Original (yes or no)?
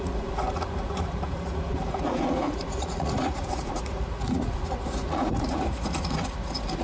no